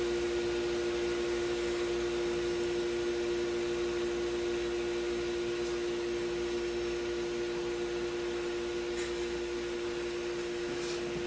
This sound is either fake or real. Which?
real